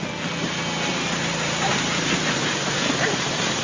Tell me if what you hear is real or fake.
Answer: real